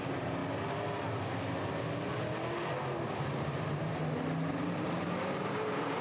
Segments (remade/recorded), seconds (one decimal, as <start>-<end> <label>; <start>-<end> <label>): 0.0-0.4 remade; 0.4-3.2 recorded; 3.2-3.9 remade; 3.9-4.5 recorded; 4.5-6.0 remade